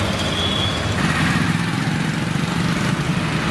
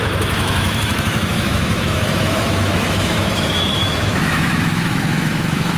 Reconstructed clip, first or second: second